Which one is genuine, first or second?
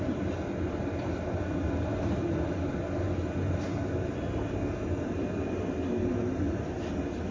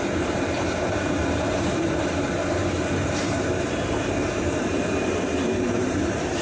first